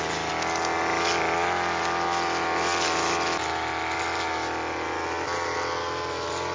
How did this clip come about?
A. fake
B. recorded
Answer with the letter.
B